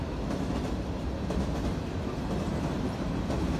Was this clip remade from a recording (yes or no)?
no